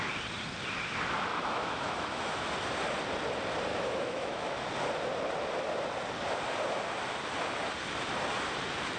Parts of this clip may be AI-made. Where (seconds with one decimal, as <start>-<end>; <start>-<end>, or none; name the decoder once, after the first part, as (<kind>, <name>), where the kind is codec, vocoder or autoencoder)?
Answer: 1.3-2.5 (autoencoder, DAC-VAE); 3.7-4.7